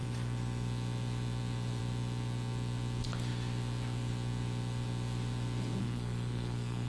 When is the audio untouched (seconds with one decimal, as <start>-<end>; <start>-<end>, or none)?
0.0-5.8